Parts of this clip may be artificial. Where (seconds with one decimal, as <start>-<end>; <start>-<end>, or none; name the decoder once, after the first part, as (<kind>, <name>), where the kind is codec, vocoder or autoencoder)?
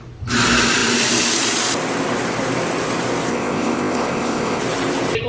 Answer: 3.3-4.6 (codec, ZipCodec)